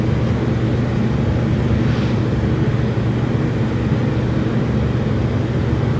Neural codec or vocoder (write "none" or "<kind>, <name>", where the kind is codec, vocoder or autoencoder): none